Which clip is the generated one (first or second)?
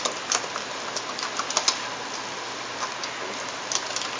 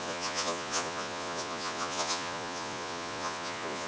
second